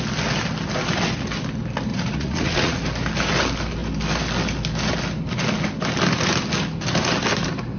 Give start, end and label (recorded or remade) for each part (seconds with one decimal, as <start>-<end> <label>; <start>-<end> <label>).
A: 0.0-1.9 recorded; 1.9-2.8 remade; 2.8-7.8 recorded